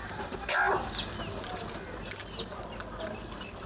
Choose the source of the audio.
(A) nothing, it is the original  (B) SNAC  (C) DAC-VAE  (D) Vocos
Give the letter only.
A